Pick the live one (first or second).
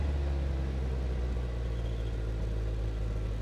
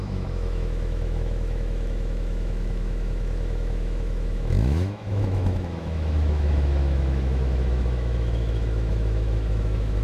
first